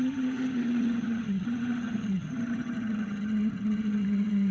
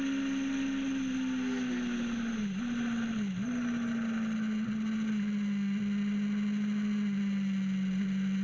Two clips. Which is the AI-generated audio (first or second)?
first